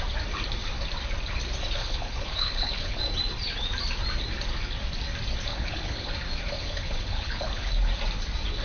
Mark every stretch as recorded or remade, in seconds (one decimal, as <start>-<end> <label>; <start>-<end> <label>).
0.0-1.8 recorded; 1.8-3.0 remade; 3.0-5.5 recorded; 5.5-6.1 remade; 6.1-6.6 recorded; 6.6-7.7 remade; 7.7-8.6 recorded